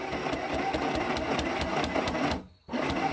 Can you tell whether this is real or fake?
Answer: real